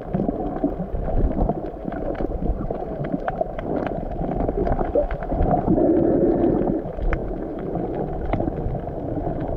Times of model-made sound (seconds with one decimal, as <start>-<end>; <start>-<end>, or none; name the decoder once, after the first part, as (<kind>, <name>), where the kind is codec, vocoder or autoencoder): 1.8-3.0 (vocoder, BigVGAN v2); 7.2-7.7